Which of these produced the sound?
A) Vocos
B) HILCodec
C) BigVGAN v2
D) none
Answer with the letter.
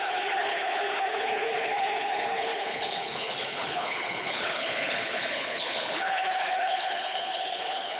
B